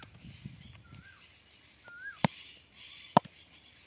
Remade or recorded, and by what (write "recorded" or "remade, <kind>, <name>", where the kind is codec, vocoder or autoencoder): remade, vocoder, BigVGAN v2